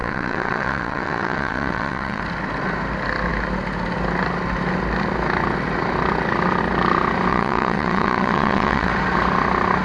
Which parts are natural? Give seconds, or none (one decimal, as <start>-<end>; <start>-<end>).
2.2-7.3; 8.9-9.8